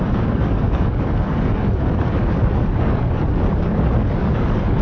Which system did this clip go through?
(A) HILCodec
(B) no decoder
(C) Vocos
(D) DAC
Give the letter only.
D